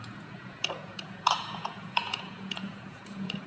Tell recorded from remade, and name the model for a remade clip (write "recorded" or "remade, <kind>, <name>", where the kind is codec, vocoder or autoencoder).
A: remade, vocoder, Vocos